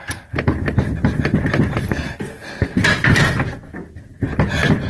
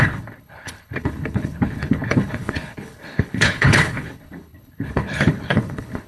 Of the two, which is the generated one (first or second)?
second